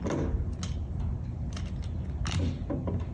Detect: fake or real real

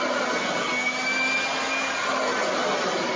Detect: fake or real real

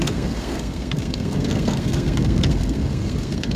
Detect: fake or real fake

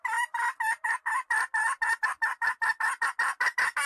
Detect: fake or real real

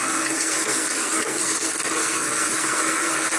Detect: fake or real fake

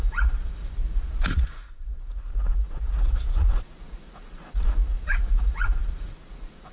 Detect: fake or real fake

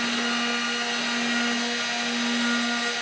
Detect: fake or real real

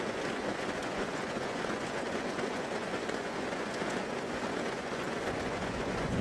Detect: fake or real fake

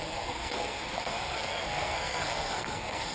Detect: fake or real fake